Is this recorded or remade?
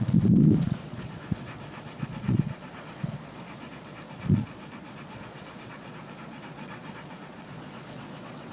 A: remade